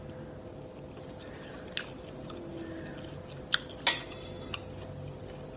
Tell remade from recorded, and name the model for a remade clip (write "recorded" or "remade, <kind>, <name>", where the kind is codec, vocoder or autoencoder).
recorded